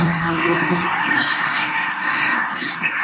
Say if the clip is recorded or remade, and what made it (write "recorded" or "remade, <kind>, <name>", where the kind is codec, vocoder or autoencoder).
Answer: remade, codec, SNAC